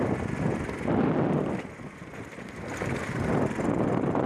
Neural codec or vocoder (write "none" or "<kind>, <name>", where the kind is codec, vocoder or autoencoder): none